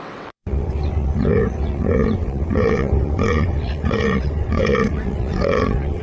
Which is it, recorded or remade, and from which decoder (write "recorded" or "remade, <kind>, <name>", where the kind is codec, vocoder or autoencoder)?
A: remade, vocoder, WaveNeXt